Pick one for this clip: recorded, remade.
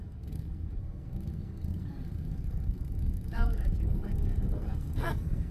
remade